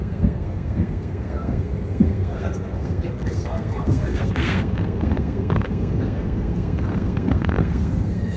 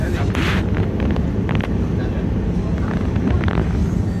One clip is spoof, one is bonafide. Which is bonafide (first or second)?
second